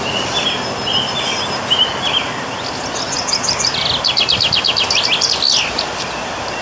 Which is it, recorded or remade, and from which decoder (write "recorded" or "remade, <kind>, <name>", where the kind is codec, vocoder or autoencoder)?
recorded